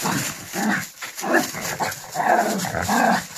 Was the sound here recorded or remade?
recorded